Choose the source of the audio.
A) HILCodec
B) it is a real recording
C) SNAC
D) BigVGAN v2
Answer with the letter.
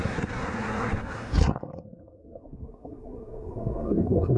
C